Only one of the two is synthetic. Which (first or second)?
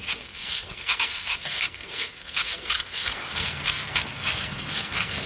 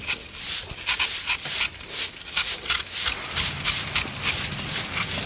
first